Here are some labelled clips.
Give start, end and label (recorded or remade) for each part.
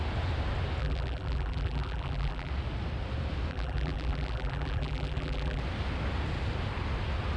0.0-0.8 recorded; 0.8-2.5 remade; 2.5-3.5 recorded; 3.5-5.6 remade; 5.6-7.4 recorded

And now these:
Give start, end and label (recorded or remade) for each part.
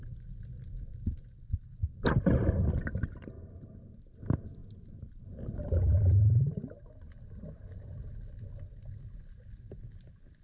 0.0-10.4 recorded